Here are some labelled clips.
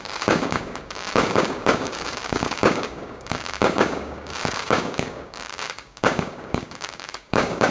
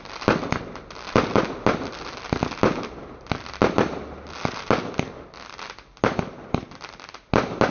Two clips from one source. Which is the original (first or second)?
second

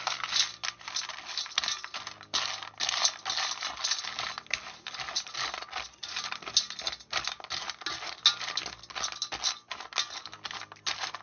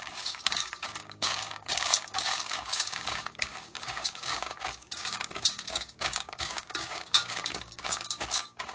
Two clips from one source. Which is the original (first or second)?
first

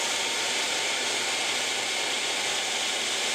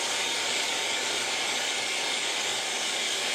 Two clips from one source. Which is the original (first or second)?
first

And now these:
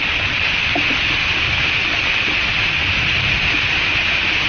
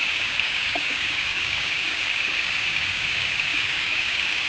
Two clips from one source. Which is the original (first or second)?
first